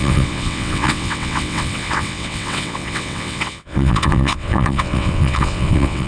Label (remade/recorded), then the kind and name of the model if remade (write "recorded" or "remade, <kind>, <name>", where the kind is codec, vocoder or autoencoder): remade, vocoder, WaveNeXt